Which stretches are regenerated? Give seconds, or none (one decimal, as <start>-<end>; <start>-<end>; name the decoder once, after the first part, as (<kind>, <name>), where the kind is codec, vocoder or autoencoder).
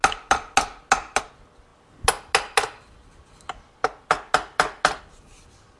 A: none